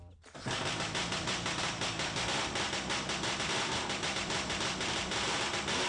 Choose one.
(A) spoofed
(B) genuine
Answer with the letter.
B